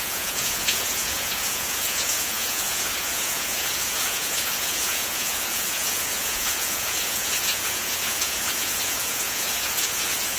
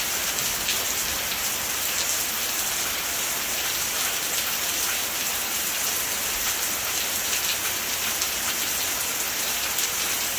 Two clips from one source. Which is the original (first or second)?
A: second